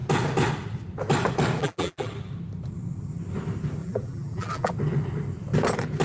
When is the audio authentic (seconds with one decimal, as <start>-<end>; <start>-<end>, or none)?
0.0-1.6; 2.1-3.8; 4.7-6.0